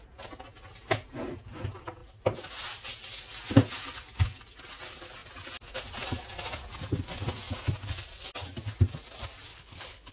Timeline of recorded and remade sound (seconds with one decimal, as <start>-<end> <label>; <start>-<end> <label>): 0.0-9.5 recorded; 9.5-10.1 remade